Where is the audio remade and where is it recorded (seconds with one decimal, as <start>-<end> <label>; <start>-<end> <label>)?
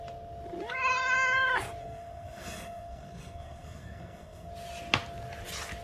0.0-1.8 recorded; 1.8-4.5 remade; 4.5-5.8 recorded